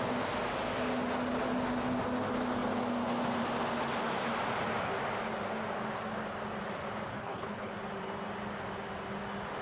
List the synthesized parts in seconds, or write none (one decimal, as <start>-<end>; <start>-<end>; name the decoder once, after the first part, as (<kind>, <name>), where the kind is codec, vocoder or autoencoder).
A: 7.1-7.7 (codec, HILCodec)